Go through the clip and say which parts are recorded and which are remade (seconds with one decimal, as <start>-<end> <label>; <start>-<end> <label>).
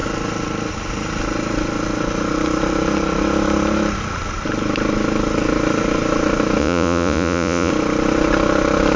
0.0-6.6 recorded; 6.6-7.7 remade; 7.7-9.0 recorded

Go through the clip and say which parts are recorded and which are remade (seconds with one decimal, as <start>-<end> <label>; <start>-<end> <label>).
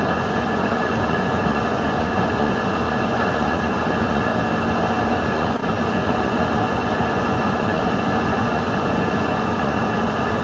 0.0-4.3 remade; 4.3-5.0 recorded; 5.0-10.4 remade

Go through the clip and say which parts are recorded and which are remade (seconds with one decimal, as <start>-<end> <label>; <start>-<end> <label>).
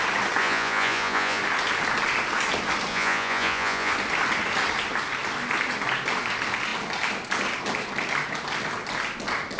0.0-0.4 recorded; 0.4-1.4 remade; 1.4-2.9 recorded; 2.9-3.9 remade; 3.9-9.6 recorded